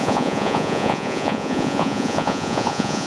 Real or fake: fake